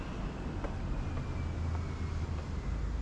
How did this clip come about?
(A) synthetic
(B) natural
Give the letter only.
B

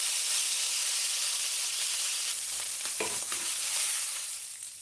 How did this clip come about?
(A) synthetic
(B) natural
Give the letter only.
A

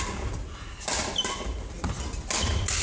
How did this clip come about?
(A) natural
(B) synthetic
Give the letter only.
A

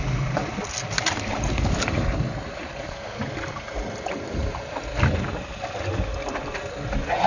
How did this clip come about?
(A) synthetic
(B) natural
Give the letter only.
B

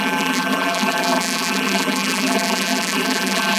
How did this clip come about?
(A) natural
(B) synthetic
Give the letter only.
B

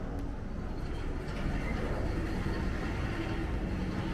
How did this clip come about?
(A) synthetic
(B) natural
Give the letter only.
B